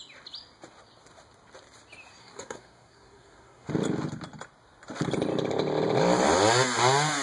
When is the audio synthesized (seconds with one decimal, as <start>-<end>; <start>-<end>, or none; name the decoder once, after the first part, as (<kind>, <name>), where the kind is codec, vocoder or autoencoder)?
2.2-3.7 (codec, SNAC)